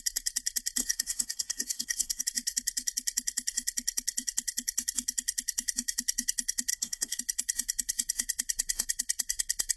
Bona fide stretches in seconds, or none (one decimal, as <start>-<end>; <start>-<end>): 0.0-0.8; 2.2-6.7; 7.2-9.8